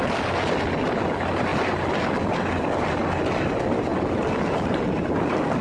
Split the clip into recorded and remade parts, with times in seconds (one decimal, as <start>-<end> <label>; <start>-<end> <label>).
0.0-5.6 recorded